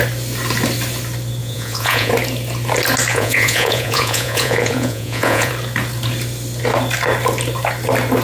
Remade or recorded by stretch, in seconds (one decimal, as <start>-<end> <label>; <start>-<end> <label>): 0.0-1.4 recorded; 1.4-2.1 remade; 2.1-3.1 recorded; 3.1-5.5 remade; 5.5-8.2 recorded